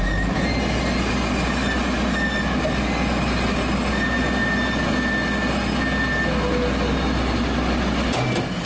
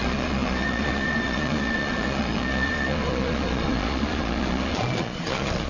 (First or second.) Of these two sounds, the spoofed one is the second